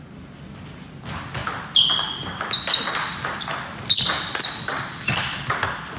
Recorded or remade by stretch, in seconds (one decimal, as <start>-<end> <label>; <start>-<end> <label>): 0.0-6.0 recorded